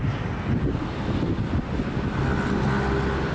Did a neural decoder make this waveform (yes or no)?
no